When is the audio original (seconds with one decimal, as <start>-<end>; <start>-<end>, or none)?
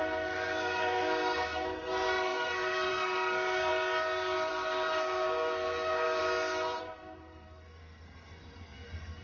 3.7-4.5; 6.2-6.8